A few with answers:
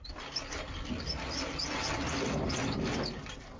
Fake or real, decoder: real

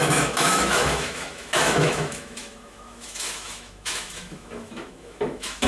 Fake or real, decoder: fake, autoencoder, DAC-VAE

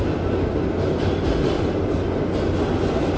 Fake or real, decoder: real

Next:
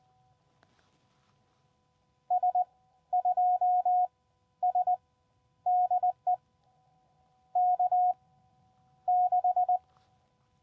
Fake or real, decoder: real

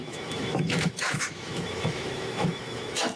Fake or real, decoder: fake, autoencoder, DAC-VAE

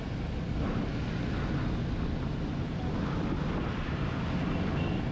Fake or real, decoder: real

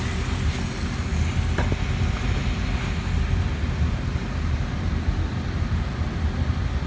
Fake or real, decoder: real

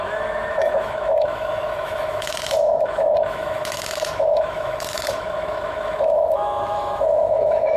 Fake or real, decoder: fake, autoencoder, DAC-VAE